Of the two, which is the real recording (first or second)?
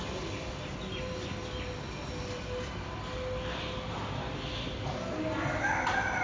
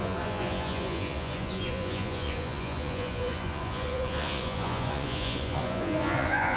first